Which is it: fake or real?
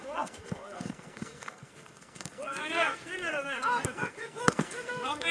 fake